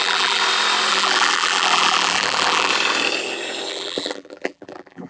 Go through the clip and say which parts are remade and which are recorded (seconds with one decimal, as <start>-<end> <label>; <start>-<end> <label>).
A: 0.0-0.4 remade; 0.4-0.9 recorded; 0.9-2.7 remade; 2.7-3.7 recorded; 3.7-5.1 remade